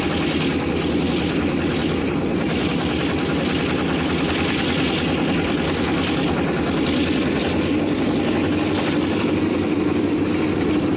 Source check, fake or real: real